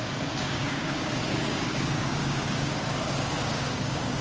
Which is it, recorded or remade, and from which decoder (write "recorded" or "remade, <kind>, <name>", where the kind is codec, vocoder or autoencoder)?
remade, codec, DAC